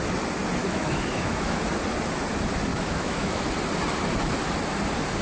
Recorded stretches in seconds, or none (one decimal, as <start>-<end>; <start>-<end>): 0.0-0.6; 1.6-2.7; 3.5-5.2